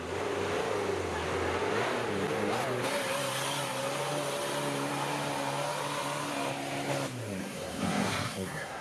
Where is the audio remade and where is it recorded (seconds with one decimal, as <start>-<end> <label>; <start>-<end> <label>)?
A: 0.0-7.4 recorded; 7.4-8.8 remade